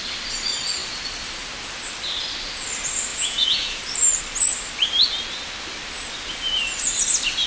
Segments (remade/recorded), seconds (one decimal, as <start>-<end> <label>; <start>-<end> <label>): 0.0-3.1 recorded; 3.1-3.8 remade; 3.8-7.5 recorded